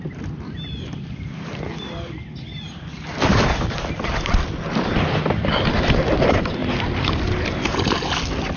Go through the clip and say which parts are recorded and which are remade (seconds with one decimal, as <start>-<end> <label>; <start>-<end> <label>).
0.0-8.6 recorded